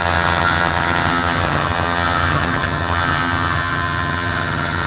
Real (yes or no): no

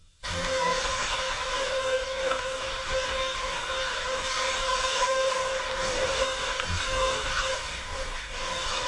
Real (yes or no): no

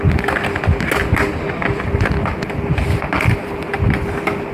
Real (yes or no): yes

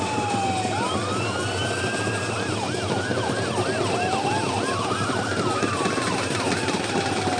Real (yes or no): yes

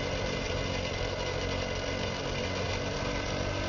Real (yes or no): yes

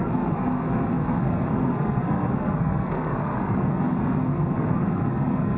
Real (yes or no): no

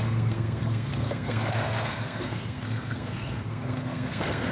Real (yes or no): no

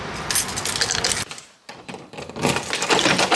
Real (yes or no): yes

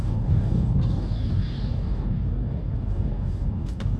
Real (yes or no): no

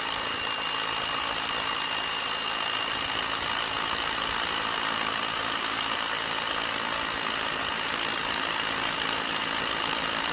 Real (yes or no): yes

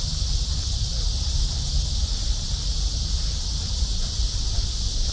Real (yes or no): yes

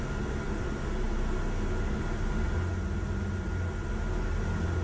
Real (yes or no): yes